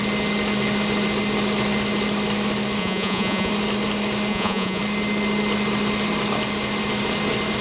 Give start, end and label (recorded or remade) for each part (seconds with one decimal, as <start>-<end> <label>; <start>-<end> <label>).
0.0-2.8 recorded; 2.8-3.5 remade; 3.5-4.3 recorded; 4.3-4.8 remade; 4.8-7.6 recorded